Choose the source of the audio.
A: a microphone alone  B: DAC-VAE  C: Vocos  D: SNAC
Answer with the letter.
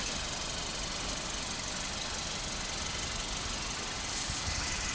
A